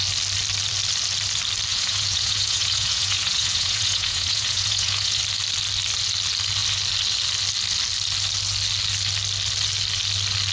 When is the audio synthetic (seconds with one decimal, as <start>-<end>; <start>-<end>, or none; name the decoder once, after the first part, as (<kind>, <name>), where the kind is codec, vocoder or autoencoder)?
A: 1.7-5.2 (vocoder, Vocos)